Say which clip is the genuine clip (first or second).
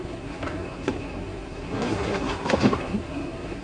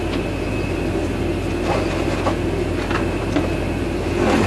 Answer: second